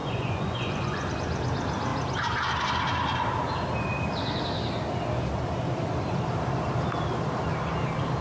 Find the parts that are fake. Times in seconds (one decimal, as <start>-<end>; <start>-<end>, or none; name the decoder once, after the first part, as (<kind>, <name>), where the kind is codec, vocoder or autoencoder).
0.0-1.1 (vocoder, Vocos)